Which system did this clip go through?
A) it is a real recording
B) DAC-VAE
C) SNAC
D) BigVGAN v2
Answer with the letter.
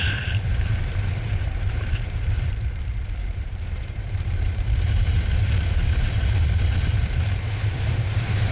D